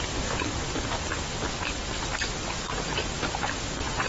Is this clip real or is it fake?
real